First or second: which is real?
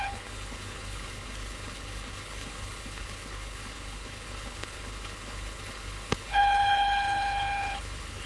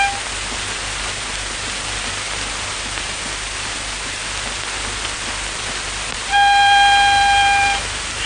second